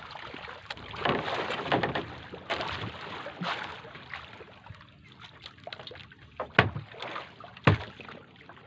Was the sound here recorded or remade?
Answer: recorded